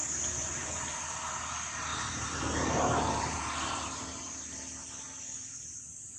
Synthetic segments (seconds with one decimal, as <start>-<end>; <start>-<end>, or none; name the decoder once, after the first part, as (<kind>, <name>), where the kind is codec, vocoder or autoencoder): 1.9-3.4 (vocoder, BigVGAN v2)